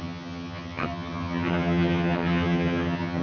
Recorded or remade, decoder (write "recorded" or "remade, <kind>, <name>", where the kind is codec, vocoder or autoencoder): remade, vocoder, HiFi-GAN